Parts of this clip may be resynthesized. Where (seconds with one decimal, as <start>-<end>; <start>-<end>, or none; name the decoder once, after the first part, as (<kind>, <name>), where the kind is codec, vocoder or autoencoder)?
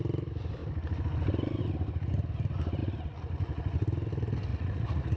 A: 4.5-5.2 (vocoder, Vocos)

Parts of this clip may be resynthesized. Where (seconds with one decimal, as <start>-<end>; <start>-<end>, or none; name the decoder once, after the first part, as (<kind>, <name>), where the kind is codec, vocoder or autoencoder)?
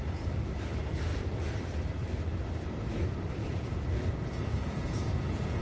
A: 3.4-5.6 (vocoder, Vocos)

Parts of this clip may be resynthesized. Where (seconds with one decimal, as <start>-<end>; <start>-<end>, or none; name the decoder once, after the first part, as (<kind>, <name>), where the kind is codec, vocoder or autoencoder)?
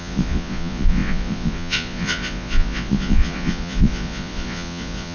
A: 0.0-5.1 (vocoder, Vocos)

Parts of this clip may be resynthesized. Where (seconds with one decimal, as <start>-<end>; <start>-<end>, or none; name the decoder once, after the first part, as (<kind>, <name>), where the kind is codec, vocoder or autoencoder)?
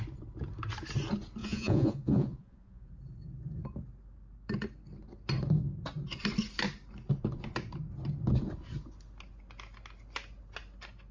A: 1.4-2.9 (vocoder, Vocos)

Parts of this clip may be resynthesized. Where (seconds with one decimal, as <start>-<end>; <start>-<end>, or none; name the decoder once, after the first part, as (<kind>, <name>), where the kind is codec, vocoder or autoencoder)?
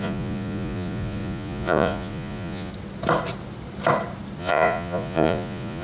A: 0.0-2.7 (vocoder, Vocos); 4.4-5.8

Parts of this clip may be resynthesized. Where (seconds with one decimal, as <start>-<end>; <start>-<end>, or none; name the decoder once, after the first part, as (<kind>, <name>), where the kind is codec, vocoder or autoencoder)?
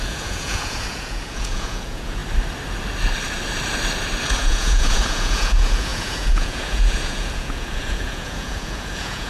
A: 0.0-2.2 (vocoder, Vocos); 4.3-9.3